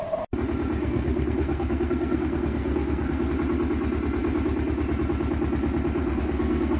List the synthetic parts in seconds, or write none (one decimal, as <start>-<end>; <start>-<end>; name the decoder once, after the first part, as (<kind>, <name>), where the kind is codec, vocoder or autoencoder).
0.8-3.3 (codec, SNAC); 6.0-6.8